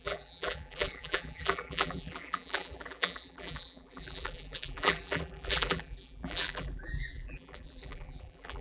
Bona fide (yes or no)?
no